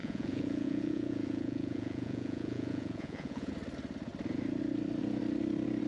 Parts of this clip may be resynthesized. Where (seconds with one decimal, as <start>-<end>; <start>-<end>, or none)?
0.0-3.5